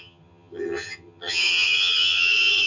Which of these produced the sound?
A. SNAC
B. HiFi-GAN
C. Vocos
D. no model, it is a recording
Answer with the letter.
B